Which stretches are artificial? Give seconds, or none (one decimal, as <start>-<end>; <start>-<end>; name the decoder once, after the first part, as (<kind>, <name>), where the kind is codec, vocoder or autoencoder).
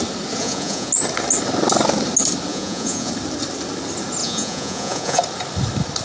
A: 0.4-0.9 (vocoder, Vocos); 2.5-3.1; 4.2-5.2